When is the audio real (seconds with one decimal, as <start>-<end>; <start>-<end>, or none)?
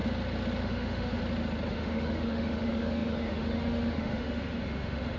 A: 0.0-0.6; 1.2-1.7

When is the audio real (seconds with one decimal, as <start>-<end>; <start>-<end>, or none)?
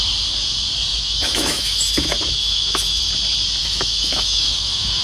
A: 0.0-0.9; 3.0-3.6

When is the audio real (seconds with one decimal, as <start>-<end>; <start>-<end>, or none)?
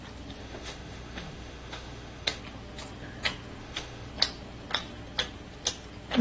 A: 0.0-0.4; 2.4-3.6; 4.1-6.2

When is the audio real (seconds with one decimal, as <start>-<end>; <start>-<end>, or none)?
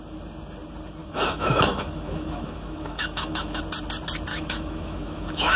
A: 0.0-1.0; 3.6-4.3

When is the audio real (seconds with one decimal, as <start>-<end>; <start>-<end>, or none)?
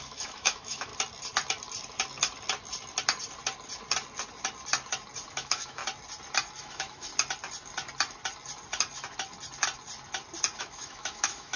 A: 0.9-5.3; 5.8-6.6; 7.1-10.6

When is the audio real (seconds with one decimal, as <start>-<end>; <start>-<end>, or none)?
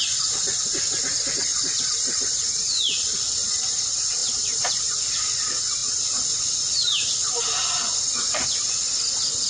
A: 0.0-9.5